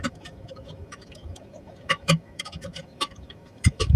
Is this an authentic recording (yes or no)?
no